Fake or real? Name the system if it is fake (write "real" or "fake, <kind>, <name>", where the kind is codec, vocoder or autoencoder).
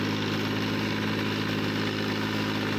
real